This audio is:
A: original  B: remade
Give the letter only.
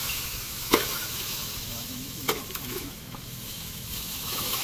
B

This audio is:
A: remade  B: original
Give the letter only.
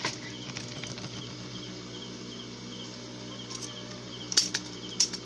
B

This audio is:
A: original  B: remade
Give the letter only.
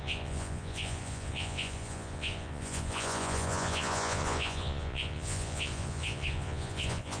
B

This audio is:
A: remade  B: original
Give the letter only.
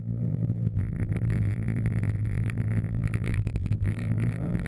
A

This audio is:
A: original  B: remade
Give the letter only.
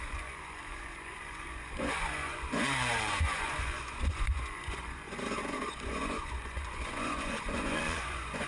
B